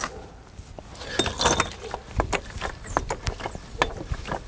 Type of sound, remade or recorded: recorded